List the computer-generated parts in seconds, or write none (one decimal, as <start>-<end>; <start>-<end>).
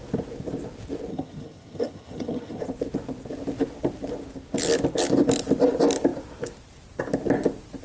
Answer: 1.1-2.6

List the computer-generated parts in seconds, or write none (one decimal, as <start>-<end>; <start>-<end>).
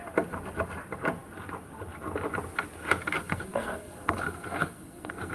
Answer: 3.2-5.3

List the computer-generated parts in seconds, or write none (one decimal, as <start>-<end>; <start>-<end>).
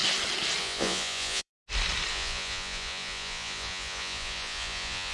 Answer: 0.6-1.5; 2.1-5.1